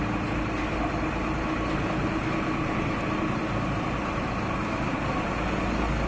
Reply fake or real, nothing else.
real